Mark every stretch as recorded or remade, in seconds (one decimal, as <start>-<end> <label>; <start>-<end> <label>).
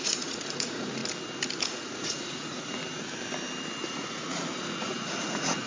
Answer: 0.0-1.0 remade; 1.0-1.6 recorded; 1.6-2.8 remade; 2.8-3.9 recorded; 3.9-5.7 remade